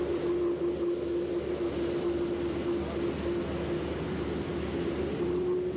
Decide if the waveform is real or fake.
real